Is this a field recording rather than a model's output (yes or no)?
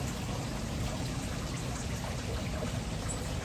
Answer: yes